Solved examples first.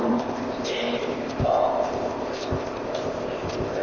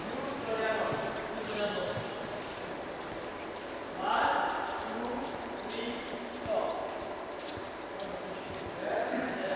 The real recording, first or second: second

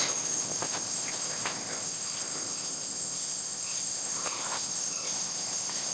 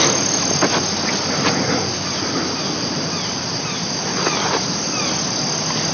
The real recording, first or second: second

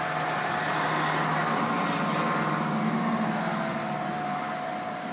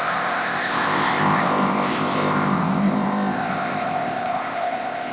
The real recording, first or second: first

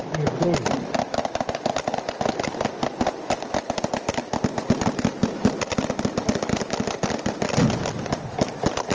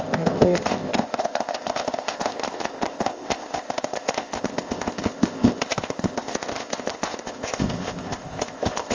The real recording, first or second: first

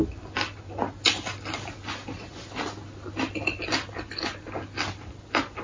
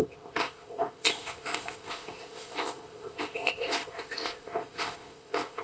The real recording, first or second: first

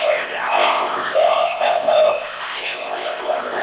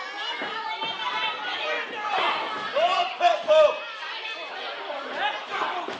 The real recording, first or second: second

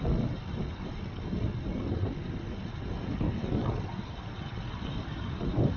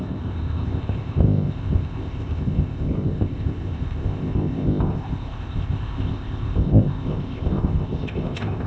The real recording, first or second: first